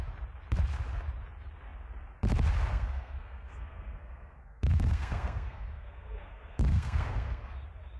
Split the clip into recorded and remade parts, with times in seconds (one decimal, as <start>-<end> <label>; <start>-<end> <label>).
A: 0.0-2.7 recorded; 2.7-7.5 remade; 7.5-8.0 recorded